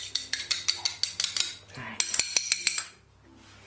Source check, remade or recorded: recorded